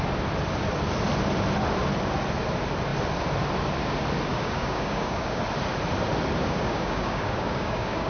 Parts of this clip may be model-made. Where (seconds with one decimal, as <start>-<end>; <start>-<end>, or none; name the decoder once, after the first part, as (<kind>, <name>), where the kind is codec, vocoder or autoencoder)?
4.3-5.4 (codec, DAC); 6.4-8.1

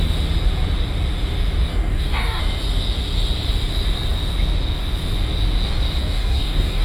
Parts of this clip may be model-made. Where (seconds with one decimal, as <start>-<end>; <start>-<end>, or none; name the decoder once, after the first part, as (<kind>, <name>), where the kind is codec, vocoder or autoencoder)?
1.7-2.4 (codec, DAC); 6.0-6.8

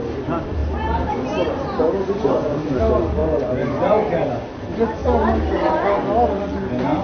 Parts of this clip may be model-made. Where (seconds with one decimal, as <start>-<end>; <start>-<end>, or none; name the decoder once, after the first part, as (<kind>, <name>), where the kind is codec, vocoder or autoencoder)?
none

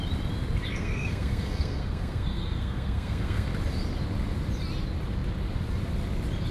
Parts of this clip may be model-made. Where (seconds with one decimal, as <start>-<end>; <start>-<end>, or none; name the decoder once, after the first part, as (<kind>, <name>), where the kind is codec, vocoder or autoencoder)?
0.7-3.5 (codec, SNAC)

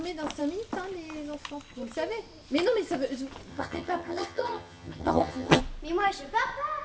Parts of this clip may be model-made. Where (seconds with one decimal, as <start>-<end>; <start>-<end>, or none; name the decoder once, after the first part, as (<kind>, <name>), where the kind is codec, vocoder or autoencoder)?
3.5-5.6 (vocoder, HiFi-GAN)

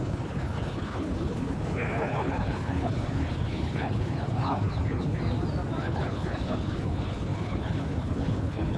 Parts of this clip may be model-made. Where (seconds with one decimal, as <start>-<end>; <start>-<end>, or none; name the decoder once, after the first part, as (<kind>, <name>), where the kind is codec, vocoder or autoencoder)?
0.0-5.2 (codec, HILCodec); 5.8-8.8

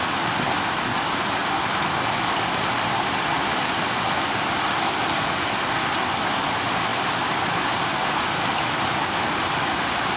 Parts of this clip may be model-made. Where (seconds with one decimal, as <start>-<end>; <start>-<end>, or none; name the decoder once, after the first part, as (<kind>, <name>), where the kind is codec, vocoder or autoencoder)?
none